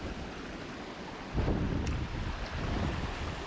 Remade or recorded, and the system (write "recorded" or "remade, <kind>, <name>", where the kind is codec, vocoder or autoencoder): recorded